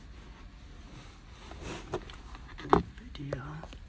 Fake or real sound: real